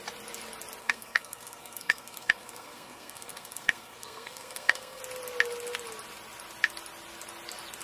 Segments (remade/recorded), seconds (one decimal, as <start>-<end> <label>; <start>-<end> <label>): 0.0-0.8 recorded; 0.8-5.0 remade; 5.0-7.8 recorded